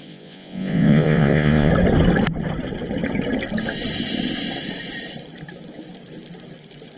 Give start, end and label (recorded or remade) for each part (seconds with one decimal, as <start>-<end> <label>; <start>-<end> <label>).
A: 0.0-1.7 remade; 1.7-7.0 recorded